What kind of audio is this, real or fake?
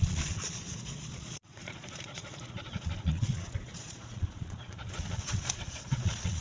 fake